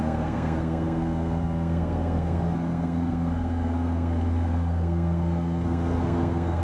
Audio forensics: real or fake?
fake